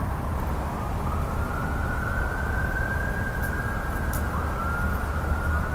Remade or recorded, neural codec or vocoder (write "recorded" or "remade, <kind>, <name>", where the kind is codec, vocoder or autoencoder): recorded